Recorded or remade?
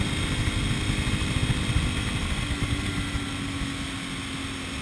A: recorded